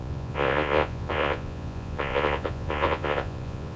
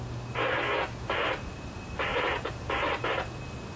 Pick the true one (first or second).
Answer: second